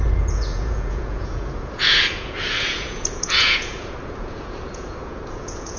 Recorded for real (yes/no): no